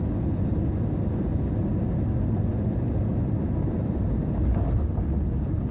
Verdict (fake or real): real